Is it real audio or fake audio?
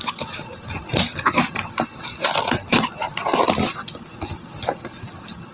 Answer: real